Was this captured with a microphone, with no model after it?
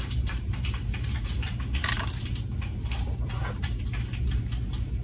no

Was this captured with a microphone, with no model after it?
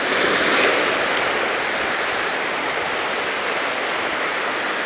yes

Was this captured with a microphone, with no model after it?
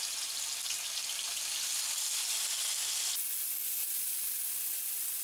yes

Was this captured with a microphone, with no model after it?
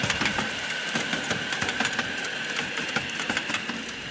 yes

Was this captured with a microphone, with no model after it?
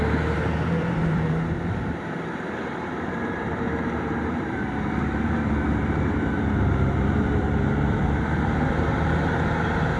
no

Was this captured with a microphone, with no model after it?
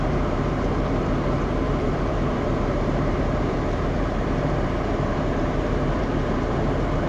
no